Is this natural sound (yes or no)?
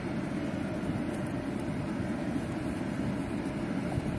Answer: yes